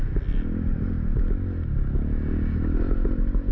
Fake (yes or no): no